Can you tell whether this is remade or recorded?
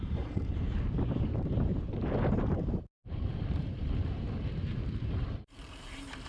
remade